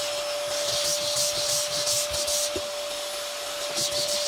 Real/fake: real